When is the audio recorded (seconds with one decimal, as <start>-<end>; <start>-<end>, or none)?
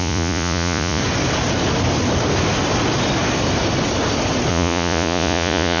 1.0-4.5